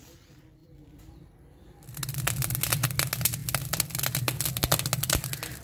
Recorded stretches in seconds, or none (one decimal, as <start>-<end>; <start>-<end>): 0.0-5.6